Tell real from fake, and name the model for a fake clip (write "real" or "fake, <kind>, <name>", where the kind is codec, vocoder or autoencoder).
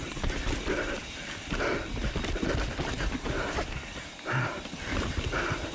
fake, vocoder, BigVGAN v2